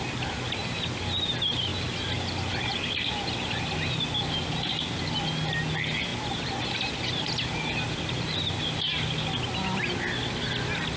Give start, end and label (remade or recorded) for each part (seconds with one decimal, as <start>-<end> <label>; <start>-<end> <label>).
0.0-11.0 recorded